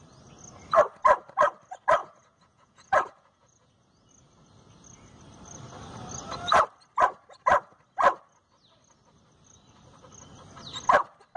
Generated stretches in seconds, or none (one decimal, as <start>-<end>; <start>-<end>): 2.0-3.7